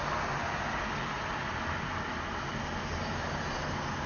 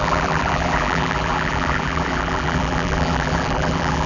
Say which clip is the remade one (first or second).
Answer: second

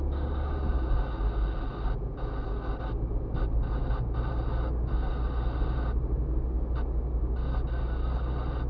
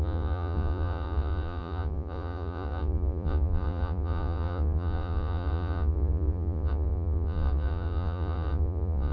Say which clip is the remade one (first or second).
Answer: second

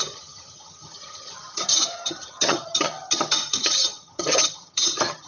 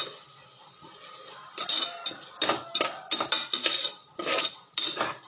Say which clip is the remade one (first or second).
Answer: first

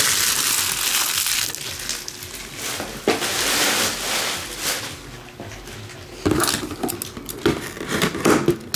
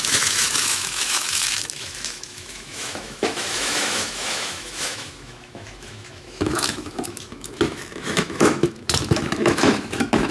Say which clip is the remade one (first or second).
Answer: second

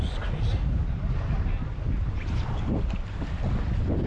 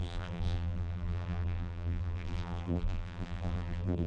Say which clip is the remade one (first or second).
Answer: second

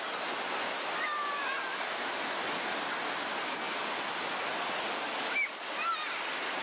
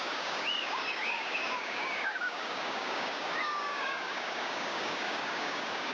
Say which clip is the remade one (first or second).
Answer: second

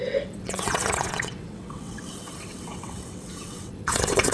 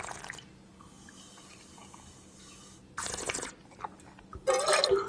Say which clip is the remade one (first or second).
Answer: first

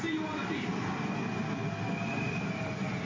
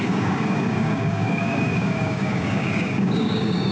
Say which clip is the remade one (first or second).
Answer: second